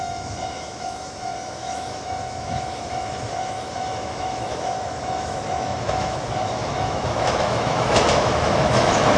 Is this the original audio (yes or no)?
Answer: no